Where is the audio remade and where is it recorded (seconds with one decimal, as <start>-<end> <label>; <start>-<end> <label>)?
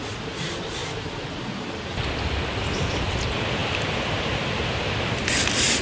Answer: 0.0-5.8 recorded